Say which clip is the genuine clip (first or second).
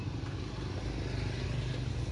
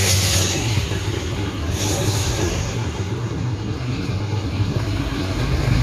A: first